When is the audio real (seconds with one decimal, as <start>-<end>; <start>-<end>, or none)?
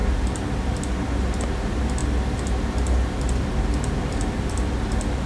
0.0-5.3